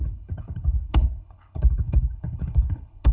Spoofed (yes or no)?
yes